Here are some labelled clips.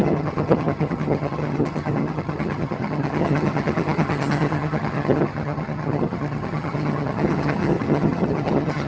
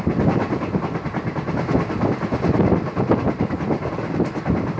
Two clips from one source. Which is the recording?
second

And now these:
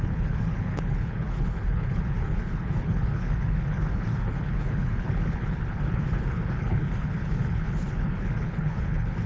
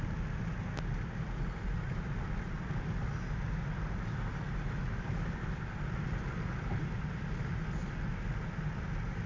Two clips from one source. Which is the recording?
second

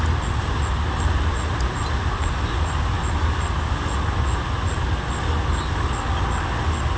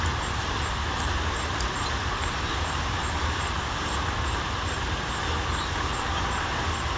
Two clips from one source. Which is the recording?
first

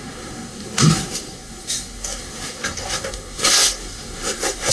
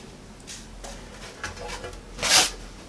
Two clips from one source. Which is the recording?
second